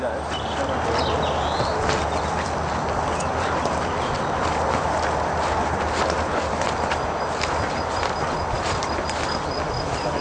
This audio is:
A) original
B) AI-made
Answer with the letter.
A